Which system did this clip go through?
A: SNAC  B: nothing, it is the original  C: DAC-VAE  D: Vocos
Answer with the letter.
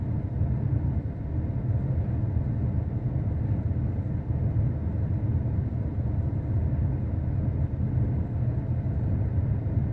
B